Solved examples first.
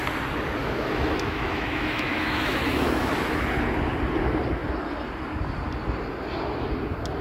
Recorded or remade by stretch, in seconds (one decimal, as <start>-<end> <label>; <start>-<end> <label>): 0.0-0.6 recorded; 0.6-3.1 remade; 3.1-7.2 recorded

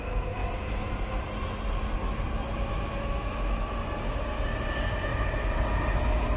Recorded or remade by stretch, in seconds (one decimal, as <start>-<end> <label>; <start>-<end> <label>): 0.0-0.4 recorded; 0.4-1.2 remade; 1.2-2.7 recorded; 2.7-3.7 remade; 3.7-6.4 recorded

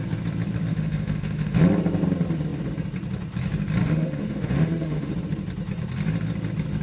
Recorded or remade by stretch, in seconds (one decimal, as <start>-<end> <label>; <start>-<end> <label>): 0.0-0.7 recorded; 0.7-1.6 remade; 1.6-3.8 recorded; 3.8-5.1 remade; 5.1-6.8 recorded

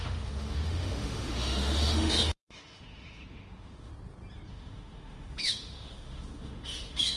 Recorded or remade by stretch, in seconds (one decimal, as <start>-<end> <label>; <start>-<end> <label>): 0.0-3.9 remade; 3.9-4.5 recorded; 4.5-7.2 remade